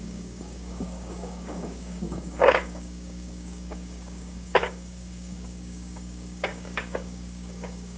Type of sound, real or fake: fake